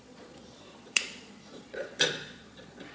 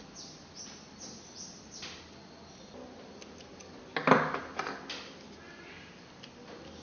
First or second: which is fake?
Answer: first